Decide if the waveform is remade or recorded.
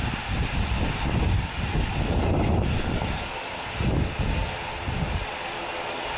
recorded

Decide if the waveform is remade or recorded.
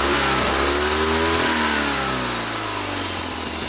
recorded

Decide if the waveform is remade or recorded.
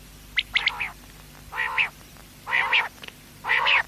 remade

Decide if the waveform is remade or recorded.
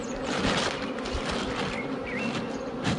recorded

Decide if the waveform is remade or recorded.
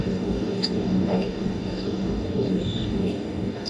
remade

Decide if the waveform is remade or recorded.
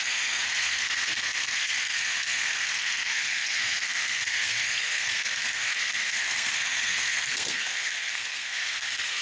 remade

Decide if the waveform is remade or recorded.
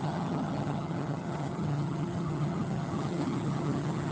remade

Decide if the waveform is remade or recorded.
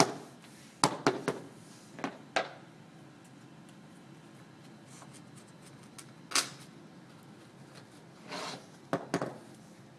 recorded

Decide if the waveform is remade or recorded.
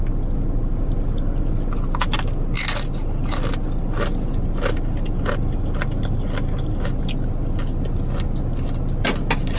recorded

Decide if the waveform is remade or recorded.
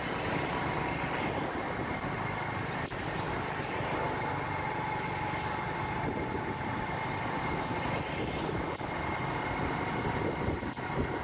recorded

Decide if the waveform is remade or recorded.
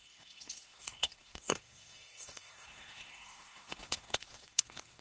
remade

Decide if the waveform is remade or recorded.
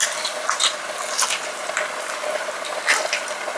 recorded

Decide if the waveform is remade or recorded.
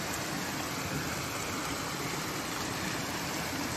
recorded